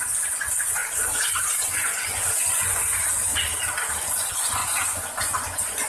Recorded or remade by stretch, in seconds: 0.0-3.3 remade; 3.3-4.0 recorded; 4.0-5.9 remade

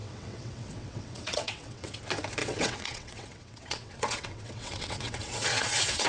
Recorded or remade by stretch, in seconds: 0.0-2.0 remade; 2.0-2.4 recorded; 2.4-6.1 remade